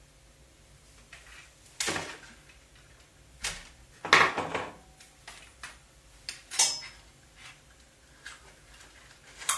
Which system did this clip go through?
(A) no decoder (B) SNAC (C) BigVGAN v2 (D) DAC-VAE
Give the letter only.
A